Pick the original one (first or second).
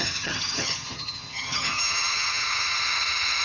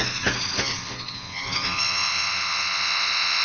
second